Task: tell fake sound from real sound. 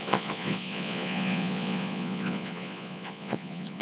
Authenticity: fake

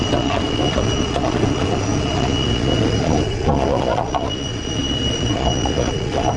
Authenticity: fake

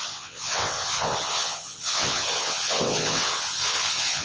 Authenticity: fake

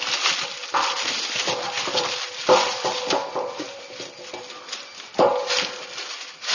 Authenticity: real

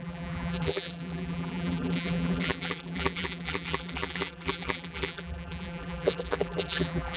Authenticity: fake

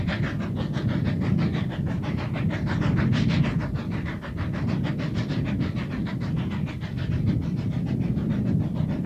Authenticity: real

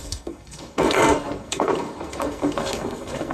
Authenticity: fake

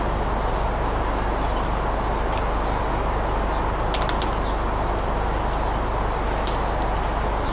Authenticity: real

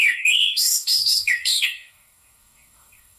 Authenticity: fake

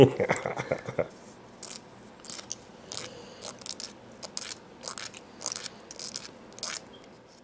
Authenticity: real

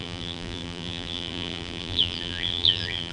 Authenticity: fake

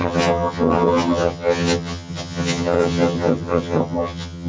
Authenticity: fake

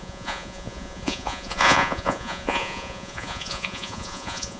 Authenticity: fake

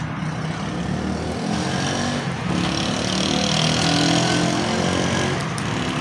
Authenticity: real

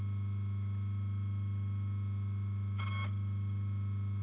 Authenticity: real